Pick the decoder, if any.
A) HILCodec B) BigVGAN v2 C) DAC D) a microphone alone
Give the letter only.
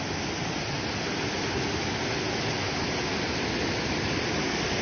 D